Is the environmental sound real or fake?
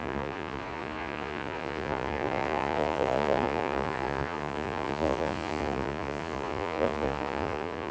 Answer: fake